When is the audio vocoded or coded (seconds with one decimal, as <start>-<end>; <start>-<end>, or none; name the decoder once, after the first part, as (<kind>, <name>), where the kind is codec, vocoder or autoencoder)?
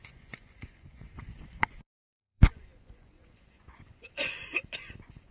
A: 0.0-5.3 (vocoder, Vocos)